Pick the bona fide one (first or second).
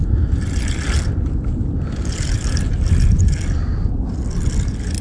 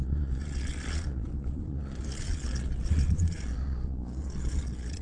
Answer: first